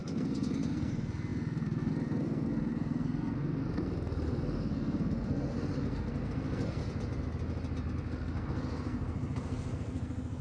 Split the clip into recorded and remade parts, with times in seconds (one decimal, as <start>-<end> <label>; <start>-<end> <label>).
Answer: 0.0-6.8 remade; 6.8-8.0 recorded; 8.0-10.4 remade